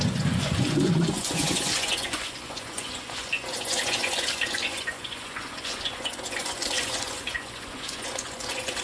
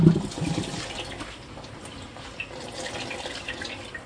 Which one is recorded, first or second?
second